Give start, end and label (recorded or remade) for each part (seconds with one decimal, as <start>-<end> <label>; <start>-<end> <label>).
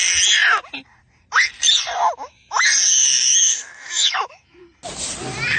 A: 0.0-2.0 recorded; 2.0-2.6 remade; 2.6-3.0 recorded; 3.0-4.6 remade; 4.6-5.6 recorded